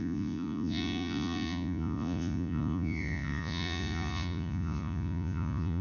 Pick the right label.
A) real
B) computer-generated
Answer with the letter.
B